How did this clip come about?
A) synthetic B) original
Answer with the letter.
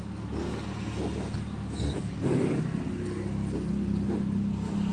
B